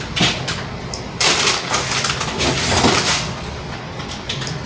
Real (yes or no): yes